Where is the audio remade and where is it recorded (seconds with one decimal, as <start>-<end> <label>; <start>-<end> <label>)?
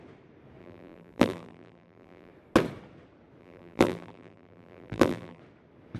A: 0.0-0.6 recorded; 0.6-2.3 remade; 2.3-3.4 recorded; 3.4-5.4 remade; 5.4-6.0 recorded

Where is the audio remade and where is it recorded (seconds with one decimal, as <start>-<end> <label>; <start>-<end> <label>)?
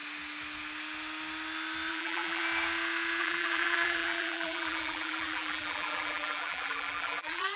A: 0.0-1.9 recorded; 1.9-2.4 remade; 2.4-3.2 recorded; 3.2-7.6 remade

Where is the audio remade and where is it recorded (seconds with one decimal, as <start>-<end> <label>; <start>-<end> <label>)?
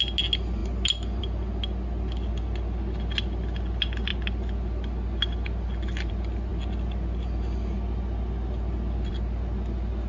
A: 0.0-10.1 recorded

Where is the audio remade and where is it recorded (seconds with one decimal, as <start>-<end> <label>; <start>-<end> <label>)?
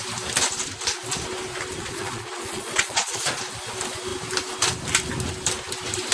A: 0.0-1.8 recorded; 1.8-3.4 remade; 3.4-6.1 recorded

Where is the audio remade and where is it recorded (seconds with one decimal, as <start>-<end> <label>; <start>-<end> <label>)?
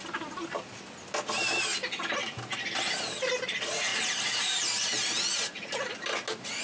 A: 0.0-6.6 recorded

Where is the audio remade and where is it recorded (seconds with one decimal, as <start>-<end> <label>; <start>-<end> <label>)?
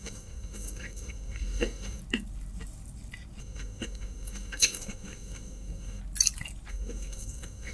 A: 0.0-2.0 remade; 2.0-3.4 recorded; 3.4-6.0 remade; 6.0-6.7 recorded; 6.7-7.7 remade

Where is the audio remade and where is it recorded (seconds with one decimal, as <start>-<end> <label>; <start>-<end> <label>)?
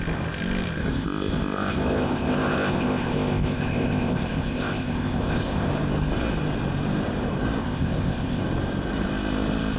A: 0.0-0.8 recorded; 0.8-5.7 remade; 5.7-7.6 recorded; 7.6-8.4 remade; 8.4-9.8 recorded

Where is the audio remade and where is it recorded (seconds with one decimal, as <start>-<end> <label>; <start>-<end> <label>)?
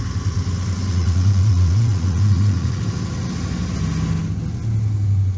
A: 0.0-0.9 recorded; 0.9-2.8 remade; 2.8-5.4 recorded